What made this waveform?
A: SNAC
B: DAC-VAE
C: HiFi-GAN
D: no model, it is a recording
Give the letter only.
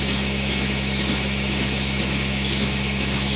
B